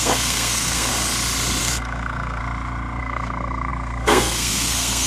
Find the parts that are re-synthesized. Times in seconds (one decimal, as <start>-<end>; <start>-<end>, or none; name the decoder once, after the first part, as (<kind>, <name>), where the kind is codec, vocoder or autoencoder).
0.0-0.9 (codec, SNAC); 1.6-2.4; 3.0-5.1